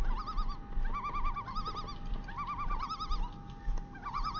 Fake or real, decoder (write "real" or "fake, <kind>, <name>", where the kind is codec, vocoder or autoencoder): real